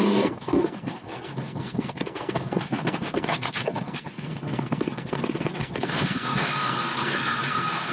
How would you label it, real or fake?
fake